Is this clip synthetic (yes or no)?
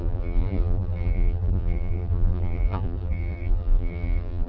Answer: yes